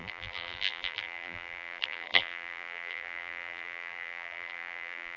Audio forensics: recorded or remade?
remade